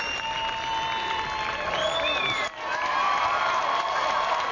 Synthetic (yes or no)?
no